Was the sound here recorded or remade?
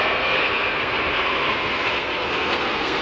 remade